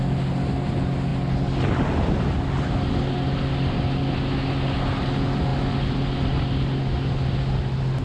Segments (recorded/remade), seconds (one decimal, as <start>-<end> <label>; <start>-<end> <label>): 0.0-8.0 recorded

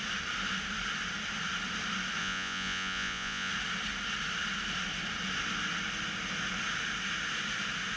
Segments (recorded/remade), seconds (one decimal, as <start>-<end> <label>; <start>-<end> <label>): 0.0-2.2 recorded; 2.2-3.5 remade; 3.5-8.0 recorded

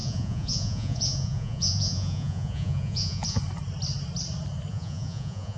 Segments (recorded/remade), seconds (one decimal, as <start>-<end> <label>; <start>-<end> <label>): 0.0-3.4 remade; 3.4-4.7 recorded; 4.7-5.6 remade